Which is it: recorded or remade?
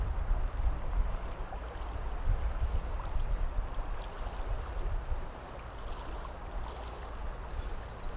recorded